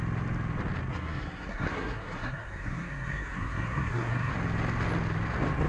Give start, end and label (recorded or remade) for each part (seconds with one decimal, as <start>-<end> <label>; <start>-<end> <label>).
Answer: 0.0-0.9 recorded; 0.9-4.3 remade; 4.3-5.7 recorded